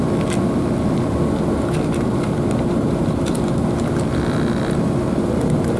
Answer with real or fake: real